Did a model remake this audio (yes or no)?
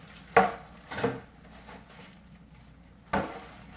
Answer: no